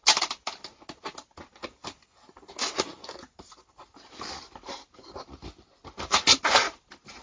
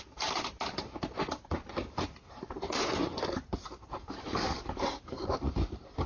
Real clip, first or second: first